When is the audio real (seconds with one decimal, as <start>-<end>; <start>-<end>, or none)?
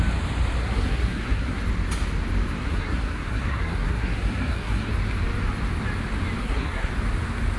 0.0-0.6; 1.6-2.6; 4.9-6.4; 6.9-7.6